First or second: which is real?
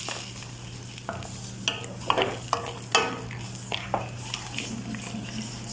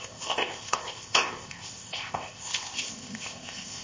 first